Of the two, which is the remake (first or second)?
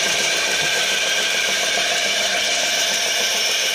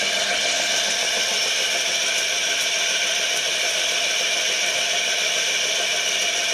first